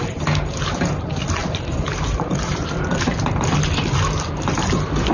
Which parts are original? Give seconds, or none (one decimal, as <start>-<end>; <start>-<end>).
0.0-5.1